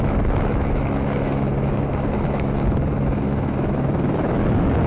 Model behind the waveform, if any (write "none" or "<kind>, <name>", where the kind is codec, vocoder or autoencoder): autoencoder, DAC-VAE